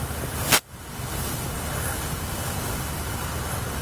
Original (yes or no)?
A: yes